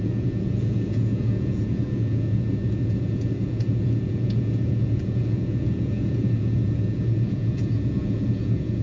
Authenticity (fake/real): fake